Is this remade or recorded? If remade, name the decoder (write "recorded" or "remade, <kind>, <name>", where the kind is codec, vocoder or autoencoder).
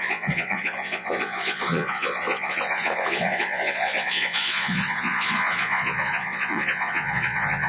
remade, vocoder, Vocos